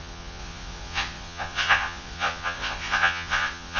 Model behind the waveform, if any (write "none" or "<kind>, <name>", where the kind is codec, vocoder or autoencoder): vocoder, Vocos